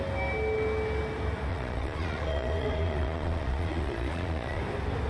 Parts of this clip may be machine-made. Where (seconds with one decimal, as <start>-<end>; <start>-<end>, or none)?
1.5-4.6